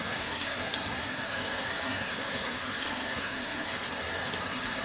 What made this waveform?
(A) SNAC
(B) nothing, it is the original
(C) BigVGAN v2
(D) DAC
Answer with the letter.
A